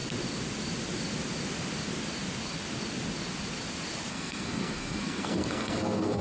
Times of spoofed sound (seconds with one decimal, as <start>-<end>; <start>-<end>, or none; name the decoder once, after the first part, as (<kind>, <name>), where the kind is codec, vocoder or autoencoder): 4.1-6.2 (codec, SNAC)